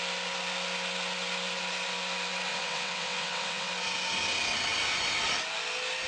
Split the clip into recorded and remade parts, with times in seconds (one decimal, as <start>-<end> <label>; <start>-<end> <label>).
0.0-2.5 recorded; 2.5-3.7 remade; 3.7-6.1 recorded